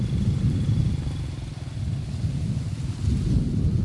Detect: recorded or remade recorded